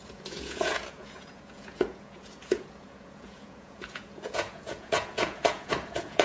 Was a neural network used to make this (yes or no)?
yes